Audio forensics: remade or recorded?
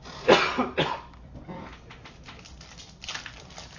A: recorded